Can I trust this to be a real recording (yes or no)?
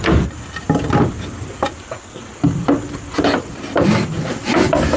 yes